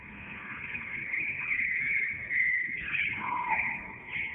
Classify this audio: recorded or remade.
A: remade